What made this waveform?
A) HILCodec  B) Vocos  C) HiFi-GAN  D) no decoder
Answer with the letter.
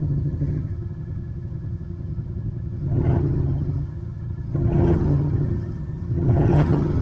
C